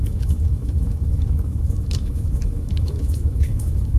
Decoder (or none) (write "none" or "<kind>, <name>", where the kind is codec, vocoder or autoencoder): autoencoder, DAC-VAE